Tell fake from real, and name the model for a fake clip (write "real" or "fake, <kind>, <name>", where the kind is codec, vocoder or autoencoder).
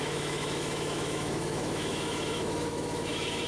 fake, autoencoder, DAC-VAE